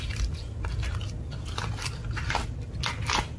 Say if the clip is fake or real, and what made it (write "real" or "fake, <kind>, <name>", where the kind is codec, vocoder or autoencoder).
real